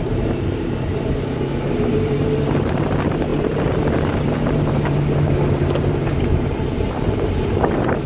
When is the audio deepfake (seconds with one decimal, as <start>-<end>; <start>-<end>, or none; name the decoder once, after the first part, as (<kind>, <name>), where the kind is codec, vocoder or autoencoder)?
0.0-8.1 (vocoder, BigVGAN v2)

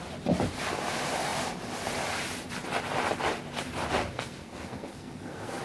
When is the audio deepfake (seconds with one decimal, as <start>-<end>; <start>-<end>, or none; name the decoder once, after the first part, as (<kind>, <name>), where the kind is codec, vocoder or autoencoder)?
4.0-5.6 (codec, SNAC)

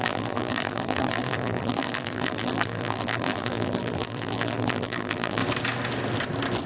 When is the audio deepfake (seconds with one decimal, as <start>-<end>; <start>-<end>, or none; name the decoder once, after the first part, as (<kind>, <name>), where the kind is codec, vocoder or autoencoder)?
0.0-5.4 (vocoder, BigVGAN v2)

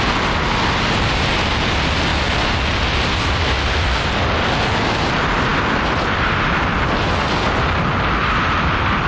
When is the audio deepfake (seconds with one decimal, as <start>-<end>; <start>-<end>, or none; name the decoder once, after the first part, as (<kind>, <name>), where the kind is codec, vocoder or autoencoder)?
none

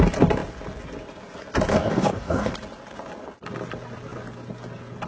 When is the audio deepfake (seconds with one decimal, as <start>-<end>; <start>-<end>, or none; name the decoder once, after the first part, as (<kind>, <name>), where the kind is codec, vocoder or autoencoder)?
1.7-2.5 (codec, DAC)